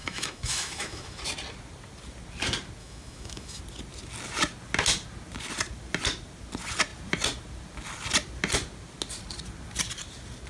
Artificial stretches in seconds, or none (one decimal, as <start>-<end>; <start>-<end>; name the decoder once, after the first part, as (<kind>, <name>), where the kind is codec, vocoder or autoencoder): 0.0-1.2 (autoencoder, DAC-VAE); 2.8-3.6